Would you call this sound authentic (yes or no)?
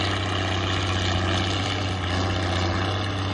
yes